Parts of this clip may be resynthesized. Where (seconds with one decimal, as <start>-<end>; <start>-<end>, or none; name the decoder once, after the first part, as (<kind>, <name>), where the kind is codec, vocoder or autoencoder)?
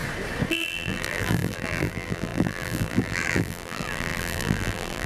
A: 0.5-5.1 (vocoder, BigVGAN v2)